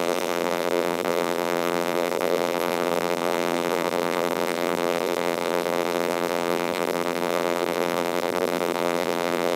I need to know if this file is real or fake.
fake